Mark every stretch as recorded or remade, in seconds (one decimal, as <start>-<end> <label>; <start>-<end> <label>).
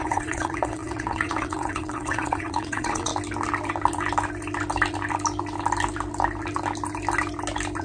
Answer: 0.0-3.1 remade; 3.1-7.8 recorded